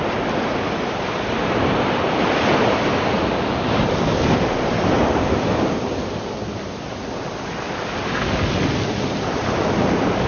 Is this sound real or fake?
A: real